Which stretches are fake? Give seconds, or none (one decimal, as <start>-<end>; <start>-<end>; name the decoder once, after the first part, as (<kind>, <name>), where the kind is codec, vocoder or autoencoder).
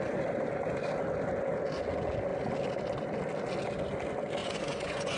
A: 4.4-5.2 (vocoder, Vocos)